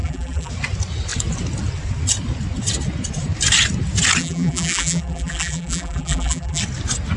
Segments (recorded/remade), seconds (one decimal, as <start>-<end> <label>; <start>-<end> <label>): 0.0-0.5 remade; 0.5-4.2 recorded; 4.2-6.6 remade; 6.6-7.2 recorded